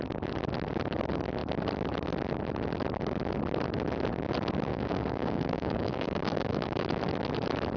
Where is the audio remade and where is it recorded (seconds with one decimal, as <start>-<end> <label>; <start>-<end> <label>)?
0.0-4.7 recorded; 4.7-7.0 remade; 7.0-7.8 recorded

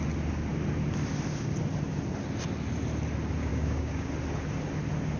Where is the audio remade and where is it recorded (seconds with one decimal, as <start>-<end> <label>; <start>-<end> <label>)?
0.0-3.5 recorded; 3.5-4.1 remade; 4.1-5.2 recorded

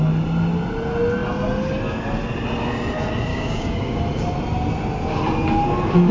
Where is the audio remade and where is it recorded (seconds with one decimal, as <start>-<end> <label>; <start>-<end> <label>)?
0.0-3.3 recorded; 3.3-4.0 remade; 4.0-6.1 recorded

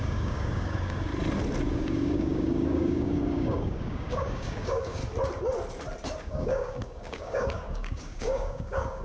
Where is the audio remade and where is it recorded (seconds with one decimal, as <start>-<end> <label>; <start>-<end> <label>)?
0.0-1.1 remade; 1.1-1.7 recorded; 1.7-5.0 remade; 5.0-6.2 recorded; 6.2-9.0 remade